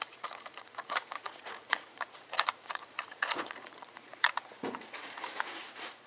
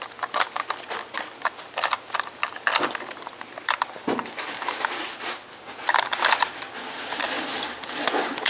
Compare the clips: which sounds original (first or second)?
second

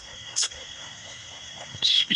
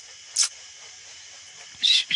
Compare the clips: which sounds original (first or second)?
second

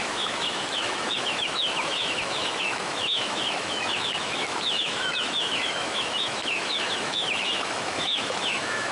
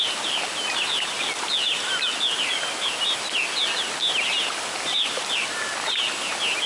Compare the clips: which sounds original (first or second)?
second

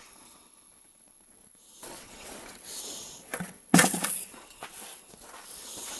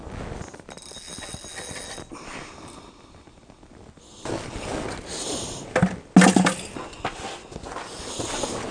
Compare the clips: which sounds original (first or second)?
second